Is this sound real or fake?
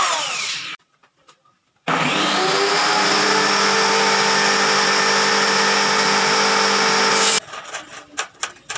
real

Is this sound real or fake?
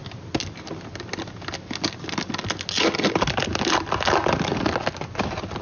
real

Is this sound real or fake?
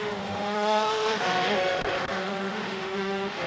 fake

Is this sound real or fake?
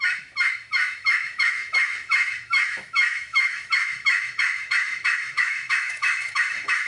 fake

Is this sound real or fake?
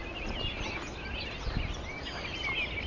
real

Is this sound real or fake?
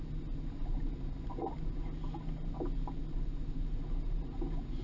real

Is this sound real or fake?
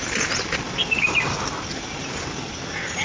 real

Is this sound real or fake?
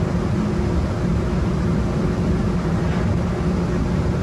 real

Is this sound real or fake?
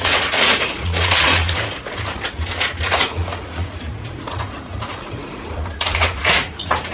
fake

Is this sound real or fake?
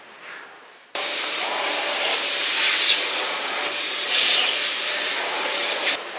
fake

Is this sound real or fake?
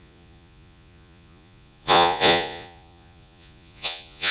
fake